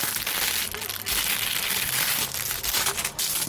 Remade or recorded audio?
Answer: recorded